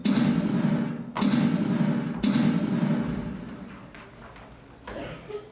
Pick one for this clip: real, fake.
real